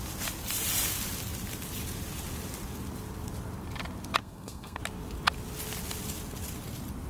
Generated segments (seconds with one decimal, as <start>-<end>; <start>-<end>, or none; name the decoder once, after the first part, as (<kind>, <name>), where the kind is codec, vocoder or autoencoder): 4.2-4.8 (codec, SNAC)